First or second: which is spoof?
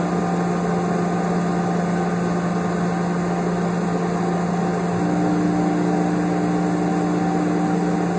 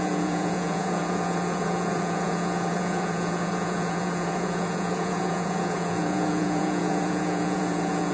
second